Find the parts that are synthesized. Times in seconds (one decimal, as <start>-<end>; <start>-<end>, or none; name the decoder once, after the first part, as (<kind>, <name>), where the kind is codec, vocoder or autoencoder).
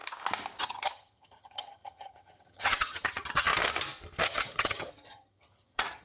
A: 0.6-3.5 (vocoder, HiFi-GAN); 4.2-6.0